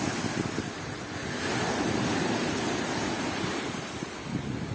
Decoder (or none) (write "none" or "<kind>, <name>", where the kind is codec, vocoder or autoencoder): none